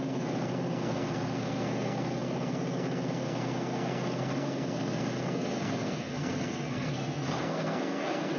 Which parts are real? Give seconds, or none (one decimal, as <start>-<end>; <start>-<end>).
none